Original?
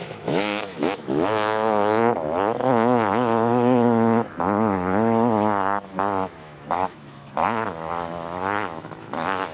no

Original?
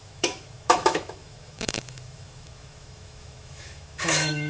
no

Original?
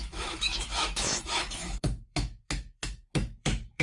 no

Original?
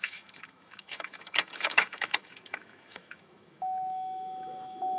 no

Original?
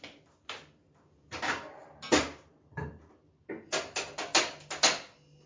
yes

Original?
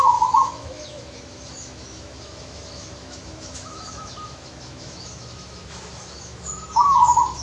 no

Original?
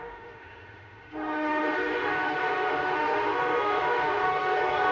no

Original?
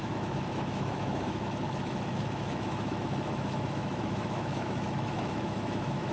no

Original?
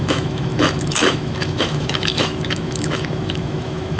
no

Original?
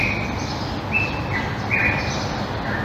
yes